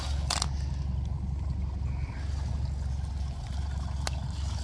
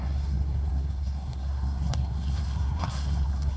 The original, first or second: first